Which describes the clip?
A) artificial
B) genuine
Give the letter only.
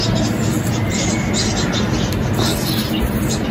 B